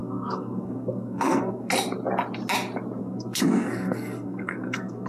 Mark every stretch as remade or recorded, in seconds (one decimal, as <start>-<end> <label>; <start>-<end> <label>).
0.0-1.7 remade; 1.7-3.0 recorded; 3.0-5.1 remade